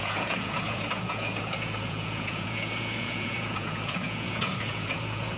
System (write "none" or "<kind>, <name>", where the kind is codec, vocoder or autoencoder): vocoder, Vocos